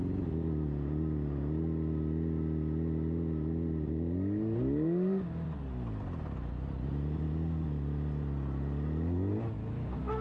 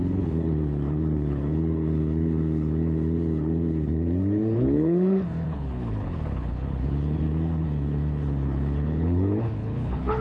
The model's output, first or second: second